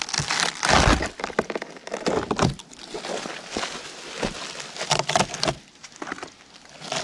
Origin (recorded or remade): recorded